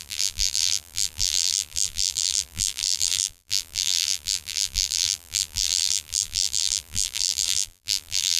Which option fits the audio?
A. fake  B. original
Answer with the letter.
A